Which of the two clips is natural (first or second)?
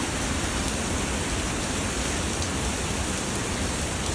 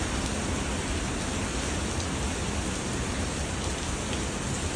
second